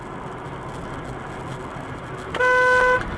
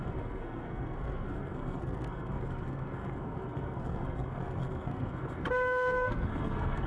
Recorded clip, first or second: first